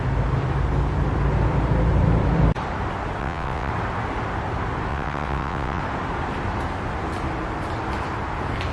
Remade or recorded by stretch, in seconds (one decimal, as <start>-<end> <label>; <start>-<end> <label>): 0.0-3.2 recorded; 3.2-3.7 remade; 3.7-4.9 recorded; 4.9-5.8 remade; 5.8-8.7 recorded